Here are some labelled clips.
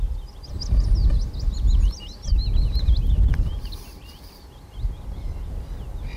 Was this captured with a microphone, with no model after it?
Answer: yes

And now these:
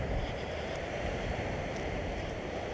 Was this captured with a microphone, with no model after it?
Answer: no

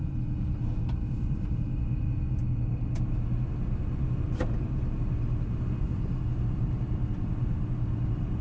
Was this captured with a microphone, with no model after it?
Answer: no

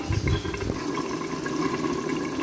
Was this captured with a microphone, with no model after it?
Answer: yes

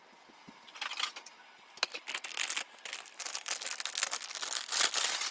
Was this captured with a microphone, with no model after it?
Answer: yes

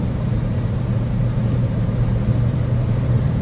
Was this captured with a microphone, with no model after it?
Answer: no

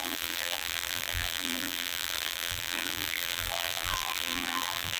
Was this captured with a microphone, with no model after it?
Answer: no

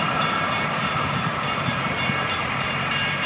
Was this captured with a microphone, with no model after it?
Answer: no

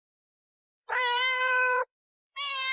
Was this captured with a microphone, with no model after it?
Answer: no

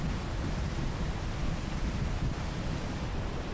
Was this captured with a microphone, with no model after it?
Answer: no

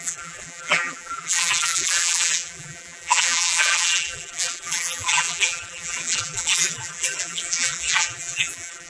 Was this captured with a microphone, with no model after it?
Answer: no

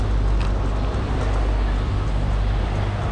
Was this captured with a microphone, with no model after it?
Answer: yes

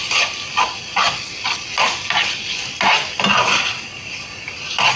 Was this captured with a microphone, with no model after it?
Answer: yes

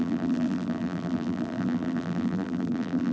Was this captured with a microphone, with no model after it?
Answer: no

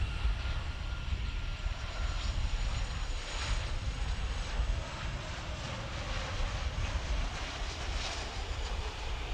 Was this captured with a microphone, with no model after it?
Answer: no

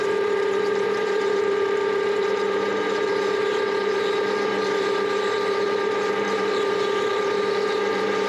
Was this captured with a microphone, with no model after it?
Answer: no